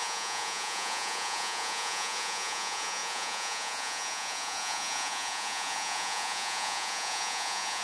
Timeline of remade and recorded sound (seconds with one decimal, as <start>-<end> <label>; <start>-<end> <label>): 0.0-7.8 remade